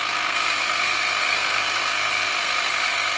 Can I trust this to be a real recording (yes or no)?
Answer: no